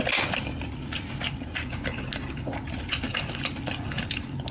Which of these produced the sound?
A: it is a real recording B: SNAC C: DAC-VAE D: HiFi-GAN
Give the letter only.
A